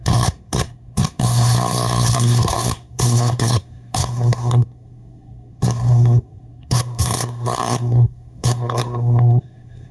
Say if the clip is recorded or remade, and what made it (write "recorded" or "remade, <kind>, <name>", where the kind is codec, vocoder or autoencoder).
remade, codec, SNAC